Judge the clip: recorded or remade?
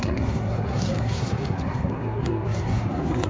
remade